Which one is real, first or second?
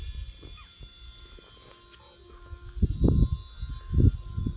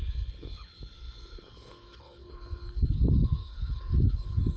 first